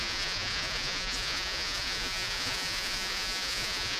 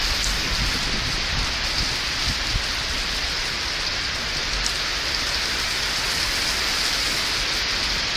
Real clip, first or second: second